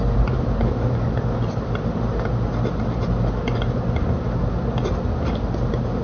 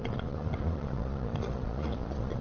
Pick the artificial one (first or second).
second